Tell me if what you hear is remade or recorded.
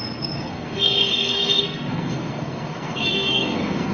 remade